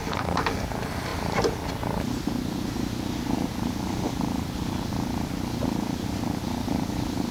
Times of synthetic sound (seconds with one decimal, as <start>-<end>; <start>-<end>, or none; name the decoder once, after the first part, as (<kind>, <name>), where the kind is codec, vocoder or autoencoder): 0.0-0.6 (codec, SNAC)